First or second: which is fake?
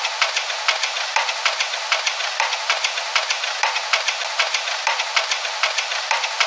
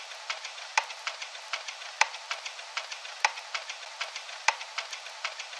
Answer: second